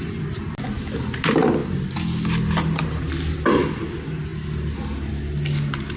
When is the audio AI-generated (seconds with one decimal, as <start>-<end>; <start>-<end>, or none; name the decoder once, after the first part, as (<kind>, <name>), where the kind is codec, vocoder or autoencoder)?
none